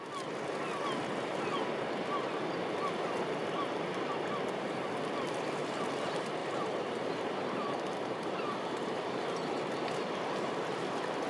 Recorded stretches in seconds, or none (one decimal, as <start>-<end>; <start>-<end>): 0.0-6.4; 9.2-11.3